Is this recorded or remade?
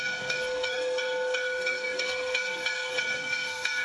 remade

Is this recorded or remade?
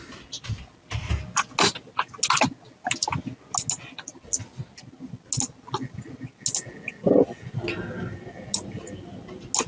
recorded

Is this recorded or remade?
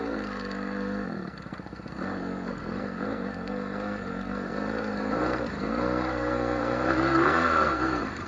remade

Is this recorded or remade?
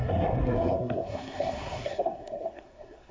remade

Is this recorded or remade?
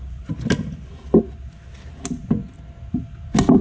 recorded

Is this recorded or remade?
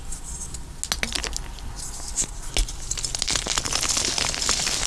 recorded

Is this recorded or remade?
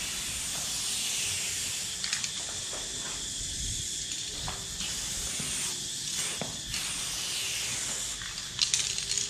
recorded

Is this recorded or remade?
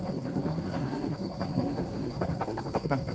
remade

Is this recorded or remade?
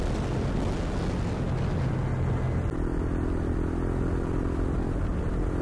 recorded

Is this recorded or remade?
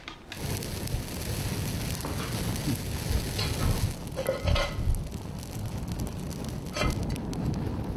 recorded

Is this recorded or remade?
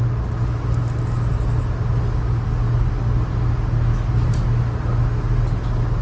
recorded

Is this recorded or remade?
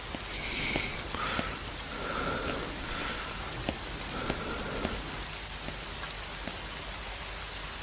recorded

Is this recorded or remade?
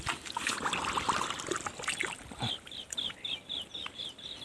recorded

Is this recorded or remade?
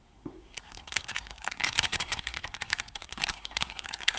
remade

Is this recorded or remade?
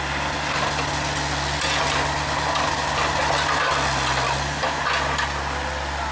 recorded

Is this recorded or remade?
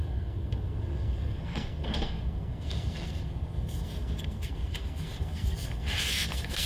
remade